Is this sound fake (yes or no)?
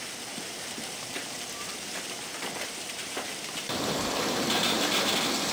yes